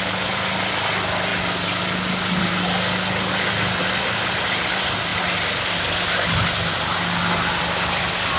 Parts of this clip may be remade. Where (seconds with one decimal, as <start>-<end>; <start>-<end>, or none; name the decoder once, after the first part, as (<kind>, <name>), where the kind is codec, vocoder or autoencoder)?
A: none